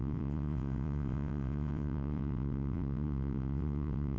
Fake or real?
fake